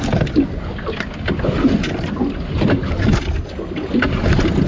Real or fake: real